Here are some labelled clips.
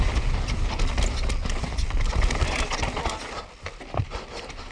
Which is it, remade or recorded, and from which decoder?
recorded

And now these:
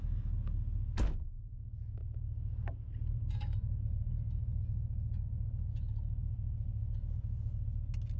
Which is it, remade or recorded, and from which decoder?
recorded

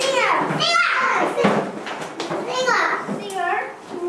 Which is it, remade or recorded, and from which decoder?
recorded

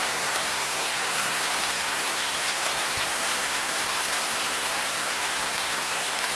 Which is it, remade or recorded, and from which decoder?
remade, codec, SNAC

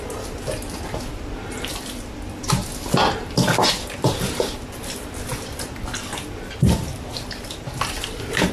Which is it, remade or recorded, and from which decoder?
recorded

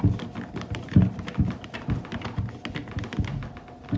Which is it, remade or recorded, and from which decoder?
recorded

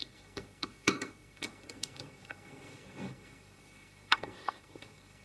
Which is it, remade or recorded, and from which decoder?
remade, codec, SNAC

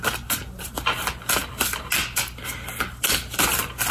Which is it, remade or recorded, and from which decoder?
recorded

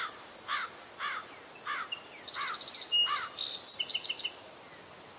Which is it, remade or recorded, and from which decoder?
recorded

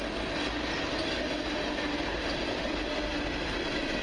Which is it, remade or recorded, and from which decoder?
recorded